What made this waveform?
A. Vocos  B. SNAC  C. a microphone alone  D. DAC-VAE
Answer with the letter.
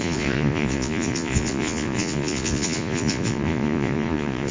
A